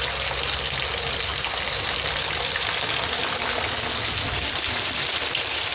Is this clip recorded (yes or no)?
yes